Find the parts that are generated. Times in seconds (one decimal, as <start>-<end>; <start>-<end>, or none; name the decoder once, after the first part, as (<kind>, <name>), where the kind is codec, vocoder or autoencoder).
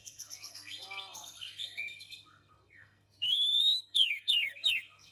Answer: 0.0-5.1 (codec, SNAC)